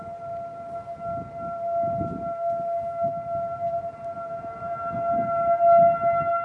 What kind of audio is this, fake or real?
real